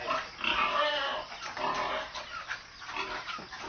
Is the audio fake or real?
real